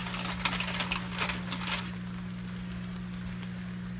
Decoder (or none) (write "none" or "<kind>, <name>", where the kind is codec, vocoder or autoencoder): none